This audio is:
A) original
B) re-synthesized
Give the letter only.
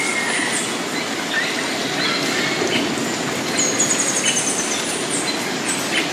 A